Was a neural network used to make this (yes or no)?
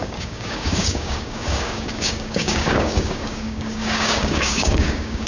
yes